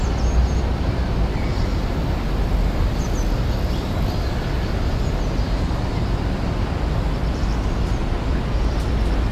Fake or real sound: real